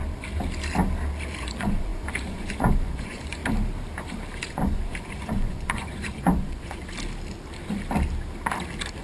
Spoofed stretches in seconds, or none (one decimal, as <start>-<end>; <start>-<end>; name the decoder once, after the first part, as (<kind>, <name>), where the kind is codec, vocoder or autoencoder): 1.4-3.4 (vocoder, Vocos); 4.5-6.8